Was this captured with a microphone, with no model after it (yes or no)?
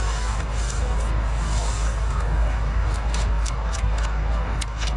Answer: no